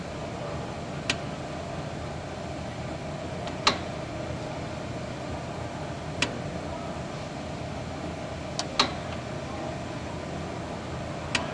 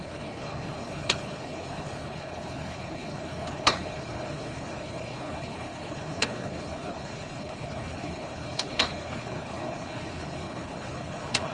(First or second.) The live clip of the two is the first